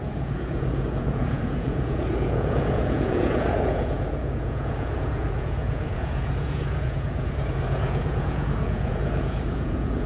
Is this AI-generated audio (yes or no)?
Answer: yes